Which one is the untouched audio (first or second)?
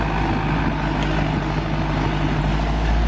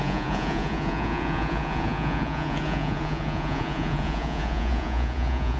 first